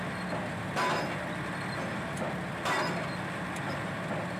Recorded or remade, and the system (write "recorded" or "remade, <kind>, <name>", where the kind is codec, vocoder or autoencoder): recorded